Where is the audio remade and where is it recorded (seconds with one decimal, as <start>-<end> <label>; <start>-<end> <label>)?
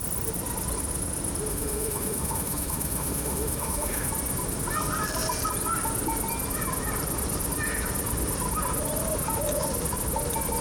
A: 0.0-1.5 recorded; 1.5-4.1 remade; 4.1-10.6 recorded